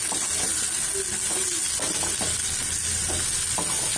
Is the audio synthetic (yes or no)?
no